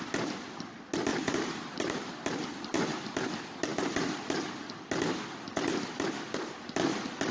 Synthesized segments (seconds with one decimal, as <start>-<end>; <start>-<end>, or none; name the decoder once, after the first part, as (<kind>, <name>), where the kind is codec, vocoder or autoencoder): 1.1-2.1 (vocoder, BigVGAN v2); 3.7-4.4